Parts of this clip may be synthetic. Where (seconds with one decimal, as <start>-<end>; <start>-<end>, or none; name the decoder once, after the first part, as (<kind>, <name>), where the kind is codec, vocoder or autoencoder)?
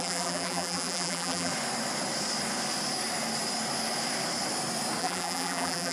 0.0-1.5 (vocoder, BigVGAN v2); 5.0-5.9